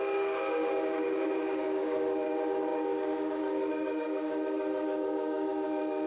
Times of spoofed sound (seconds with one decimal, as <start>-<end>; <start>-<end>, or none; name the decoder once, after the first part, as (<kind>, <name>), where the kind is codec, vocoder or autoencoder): 0.0-6.1 (codec, DAC)